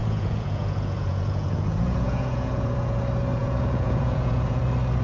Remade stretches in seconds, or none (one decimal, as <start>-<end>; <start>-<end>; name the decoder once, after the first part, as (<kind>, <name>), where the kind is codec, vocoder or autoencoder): 0.0-3.0 (vocoder, Vocos); 3.4-4.6